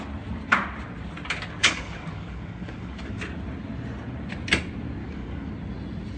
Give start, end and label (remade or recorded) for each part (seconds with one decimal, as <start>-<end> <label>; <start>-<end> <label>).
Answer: 0.0-1.6 recorded; 1.6-3.2 remade; 3.2-5.0 recorded; 5.0-5.5 remade; 5.5-6.2 recorded